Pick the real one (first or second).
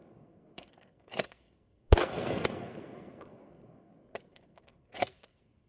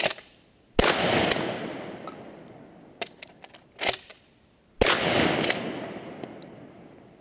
second